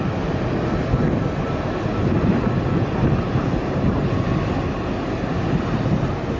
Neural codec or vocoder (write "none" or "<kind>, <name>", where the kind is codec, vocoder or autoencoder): none